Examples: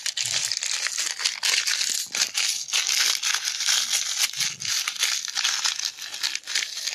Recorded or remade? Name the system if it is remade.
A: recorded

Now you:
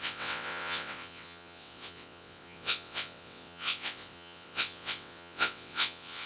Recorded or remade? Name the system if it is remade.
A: remade, vocoder, WaveNeXt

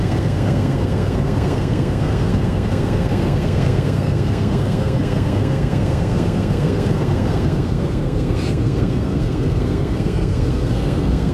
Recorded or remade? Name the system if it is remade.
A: remade, codec, SNAC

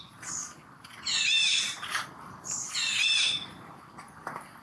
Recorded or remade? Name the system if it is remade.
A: recorded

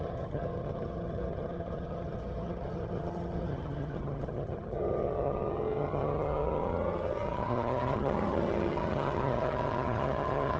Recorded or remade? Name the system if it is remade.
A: remade, vocoder, HiFi-GAN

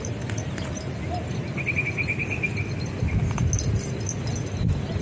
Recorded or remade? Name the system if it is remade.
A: recorded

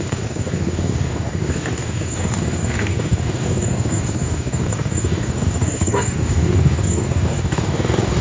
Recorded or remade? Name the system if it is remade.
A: remade, codec, DAC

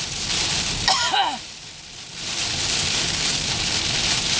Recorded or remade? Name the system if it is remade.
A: recorded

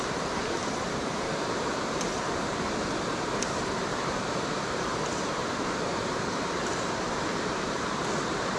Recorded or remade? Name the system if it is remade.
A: remade, vocoder, BigVGAN v2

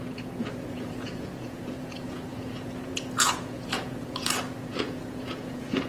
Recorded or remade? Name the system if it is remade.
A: remade, vocoder, Vocos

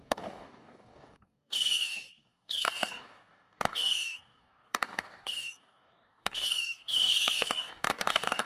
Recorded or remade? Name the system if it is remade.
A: remade, codec, DAC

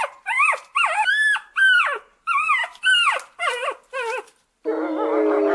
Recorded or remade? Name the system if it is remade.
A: recorded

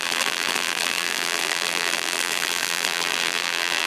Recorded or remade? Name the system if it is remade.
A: remade, vocoder, BigVGAN v2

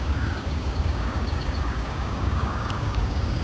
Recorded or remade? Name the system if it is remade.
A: remade, codec, DAC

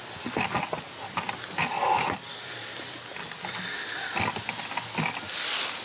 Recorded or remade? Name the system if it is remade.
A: recorded